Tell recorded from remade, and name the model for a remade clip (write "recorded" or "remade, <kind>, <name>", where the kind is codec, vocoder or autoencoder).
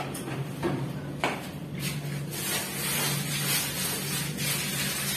recorded